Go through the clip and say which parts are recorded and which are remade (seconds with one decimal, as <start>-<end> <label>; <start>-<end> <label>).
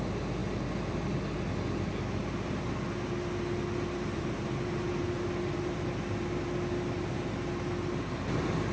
0.0-8.7 recorded